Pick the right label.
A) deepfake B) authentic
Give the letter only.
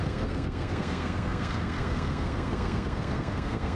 A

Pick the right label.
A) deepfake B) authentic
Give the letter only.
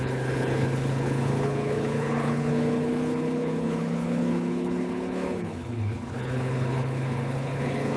A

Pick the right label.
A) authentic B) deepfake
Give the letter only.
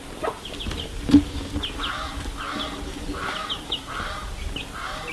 A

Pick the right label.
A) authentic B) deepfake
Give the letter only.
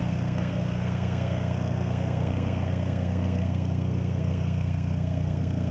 B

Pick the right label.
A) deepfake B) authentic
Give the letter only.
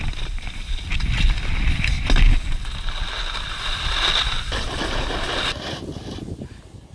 B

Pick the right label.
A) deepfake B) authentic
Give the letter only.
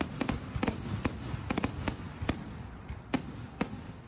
B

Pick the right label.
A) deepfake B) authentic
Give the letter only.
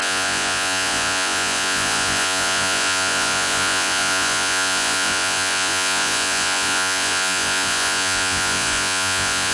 A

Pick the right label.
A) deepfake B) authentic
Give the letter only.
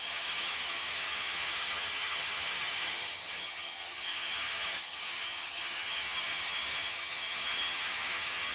A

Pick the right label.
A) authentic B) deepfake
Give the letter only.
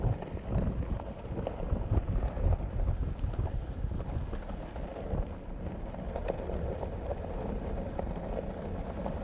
A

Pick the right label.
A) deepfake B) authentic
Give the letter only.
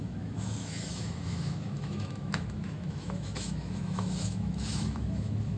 A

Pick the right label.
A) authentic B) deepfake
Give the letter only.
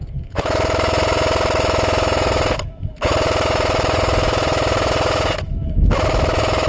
B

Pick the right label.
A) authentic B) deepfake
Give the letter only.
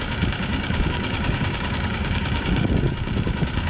B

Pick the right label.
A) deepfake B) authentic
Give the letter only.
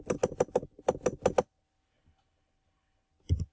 B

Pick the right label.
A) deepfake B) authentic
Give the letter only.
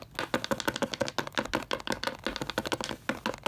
B